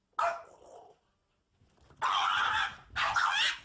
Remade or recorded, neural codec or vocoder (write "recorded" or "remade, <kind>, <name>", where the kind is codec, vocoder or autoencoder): recorded